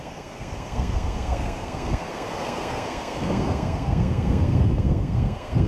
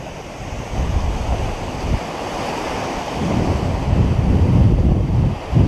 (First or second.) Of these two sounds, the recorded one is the second